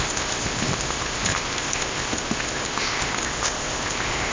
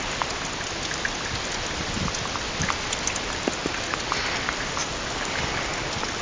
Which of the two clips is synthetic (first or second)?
first